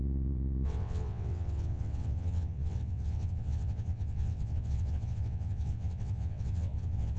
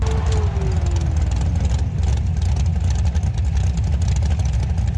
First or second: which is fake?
first